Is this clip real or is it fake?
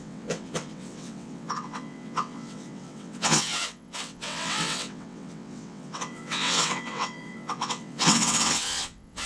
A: fake